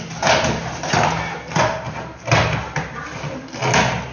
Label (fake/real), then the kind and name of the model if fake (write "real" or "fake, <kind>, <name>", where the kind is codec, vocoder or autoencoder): real